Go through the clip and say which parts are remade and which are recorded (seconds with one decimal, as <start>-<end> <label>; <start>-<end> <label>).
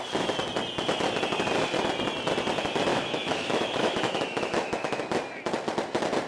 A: 0.0-2.9 recorded; 2.9-5.0 remade; 5.0-6.3 recorded